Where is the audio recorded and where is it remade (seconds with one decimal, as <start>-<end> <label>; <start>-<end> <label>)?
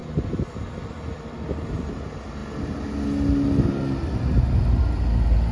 0.0-5.5 recorded